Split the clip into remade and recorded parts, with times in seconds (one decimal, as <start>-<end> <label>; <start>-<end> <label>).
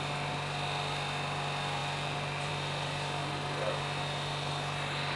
0.0-1.8 recorded; 1.8-2.5 remade; 2.5-3.2 recorded; 3.2-3.8 remade; 3.8-5.2 recorded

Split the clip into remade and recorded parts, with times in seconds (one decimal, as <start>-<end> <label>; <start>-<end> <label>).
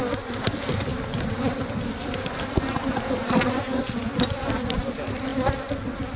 0.0-0.9 recorded; 0.9-2.4 remade; 2.4-5.3 recorded; 5.3-6.2 remade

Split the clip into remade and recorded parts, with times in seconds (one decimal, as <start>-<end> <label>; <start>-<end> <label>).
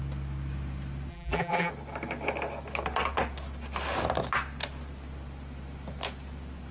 0.0-1.1 recorded; 1.1-1.7 remade; 1.7-6.7 recorded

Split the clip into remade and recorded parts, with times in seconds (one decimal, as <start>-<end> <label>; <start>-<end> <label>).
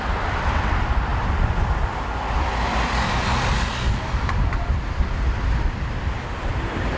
0.0-7.0 remade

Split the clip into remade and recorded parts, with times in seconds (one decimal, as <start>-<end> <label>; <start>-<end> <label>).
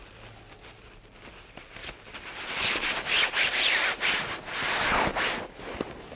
0.0-6.2 recorded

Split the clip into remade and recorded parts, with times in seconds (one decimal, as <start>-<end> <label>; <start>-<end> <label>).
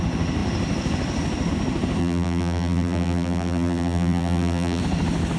0.0-2.0 recorded; 2.0-4.8 remade; 4.8-5.4 recorded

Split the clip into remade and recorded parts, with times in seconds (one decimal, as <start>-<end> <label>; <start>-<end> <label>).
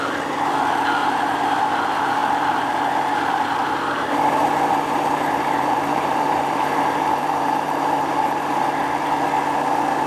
0.0-1.0 recorded; 1.0-1.8 remade; 1.8-4.4 recorded; 4.4-8.8 remade; 8.8-10.1 recorded